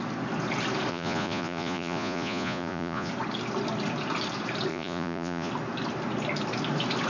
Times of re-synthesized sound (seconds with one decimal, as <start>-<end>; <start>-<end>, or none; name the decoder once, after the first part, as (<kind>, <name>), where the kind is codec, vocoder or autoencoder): 0.9-3.1 (vocoder, Vocos); 4.7-5.5

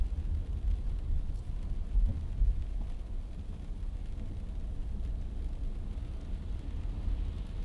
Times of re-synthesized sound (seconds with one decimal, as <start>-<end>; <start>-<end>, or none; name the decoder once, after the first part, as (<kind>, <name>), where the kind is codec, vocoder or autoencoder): none

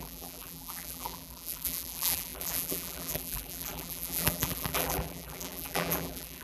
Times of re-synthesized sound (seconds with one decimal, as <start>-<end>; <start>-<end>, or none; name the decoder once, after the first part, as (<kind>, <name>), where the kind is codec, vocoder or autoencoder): 0.0-6.4 (vocoder, BigVGAN v2)

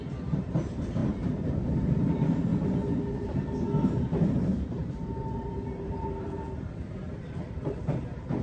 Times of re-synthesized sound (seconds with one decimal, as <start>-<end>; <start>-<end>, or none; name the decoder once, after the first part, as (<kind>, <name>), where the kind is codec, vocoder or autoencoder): 0.0-2.5 (vocoder, BigVGAN v2); 3.9-8.4